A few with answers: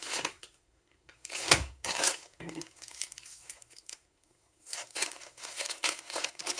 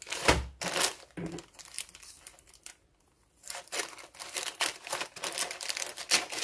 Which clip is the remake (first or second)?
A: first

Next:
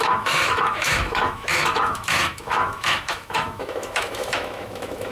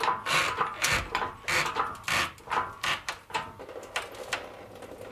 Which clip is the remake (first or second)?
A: first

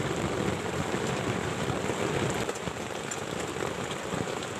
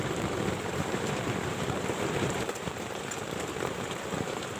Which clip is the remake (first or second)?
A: second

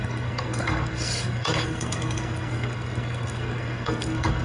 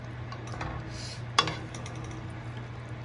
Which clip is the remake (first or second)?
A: first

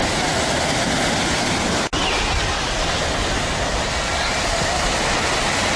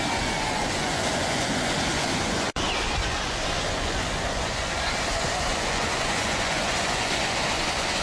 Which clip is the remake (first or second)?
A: second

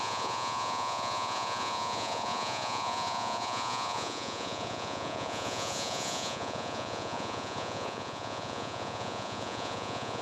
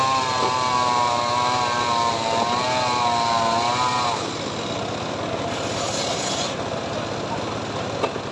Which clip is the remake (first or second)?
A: first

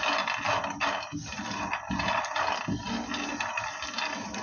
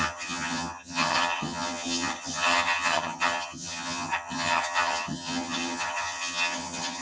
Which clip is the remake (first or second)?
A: second